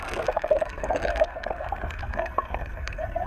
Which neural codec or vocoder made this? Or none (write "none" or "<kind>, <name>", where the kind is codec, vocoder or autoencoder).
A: codec, SNAC